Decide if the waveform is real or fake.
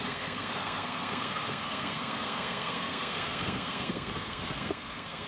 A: fake